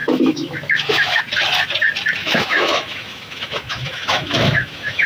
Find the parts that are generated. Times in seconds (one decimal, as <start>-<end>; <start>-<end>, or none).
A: 0.0-1.2; 2.2-5.1